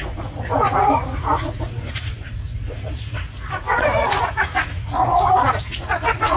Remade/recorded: remade